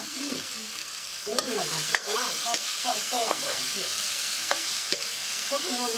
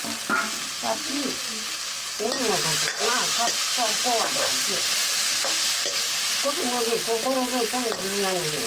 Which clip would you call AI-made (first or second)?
first